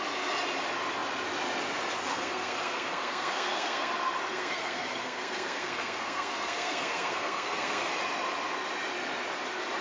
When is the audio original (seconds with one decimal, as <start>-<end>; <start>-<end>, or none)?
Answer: 0.0-2.1; 3.9-4.3; 7.9-9.8